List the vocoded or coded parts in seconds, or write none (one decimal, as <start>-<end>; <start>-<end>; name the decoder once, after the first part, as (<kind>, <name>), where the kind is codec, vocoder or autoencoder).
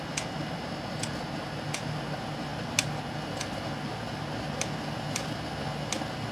none